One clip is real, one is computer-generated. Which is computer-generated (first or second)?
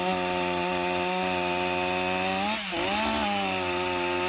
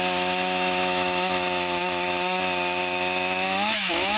second